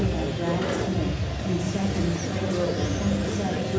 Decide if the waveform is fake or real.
real